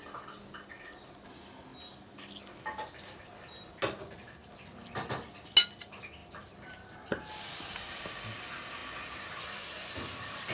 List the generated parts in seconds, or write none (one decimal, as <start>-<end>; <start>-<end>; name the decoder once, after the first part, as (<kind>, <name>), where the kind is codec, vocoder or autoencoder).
none